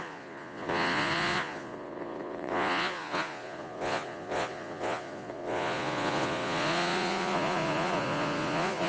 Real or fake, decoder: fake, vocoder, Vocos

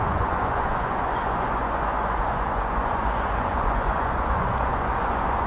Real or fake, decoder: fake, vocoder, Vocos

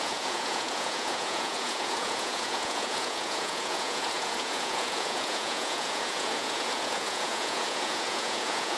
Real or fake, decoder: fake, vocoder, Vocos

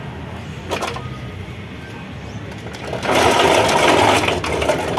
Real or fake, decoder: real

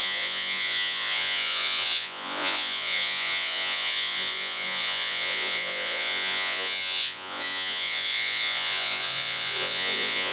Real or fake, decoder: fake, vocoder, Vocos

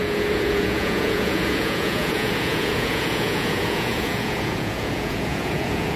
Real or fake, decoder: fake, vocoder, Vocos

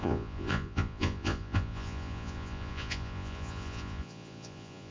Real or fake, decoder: fake, vocoder, Vocos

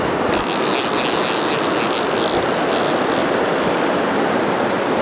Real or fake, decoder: real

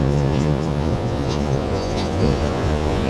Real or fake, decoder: fake, vocoder, Vocos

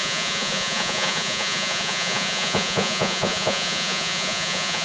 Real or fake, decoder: fake, vocoder, Vocos